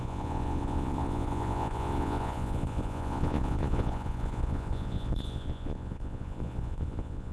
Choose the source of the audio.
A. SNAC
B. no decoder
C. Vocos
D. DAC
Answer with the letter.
C